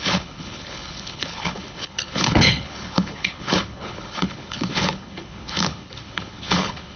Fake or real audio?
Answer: fake